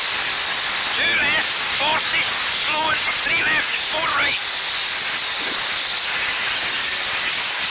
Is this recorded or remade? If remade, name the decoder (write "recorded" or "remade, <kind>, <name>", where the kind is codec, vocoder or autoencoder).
recorded